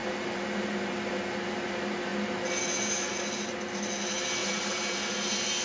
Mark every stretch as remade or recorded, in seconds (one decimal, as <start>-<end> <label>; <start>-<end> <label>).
0.0-4.4 recorded; 4.4-4.9 remade; 4.9-5.6 recorded